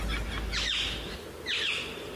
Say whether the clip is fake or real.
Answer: real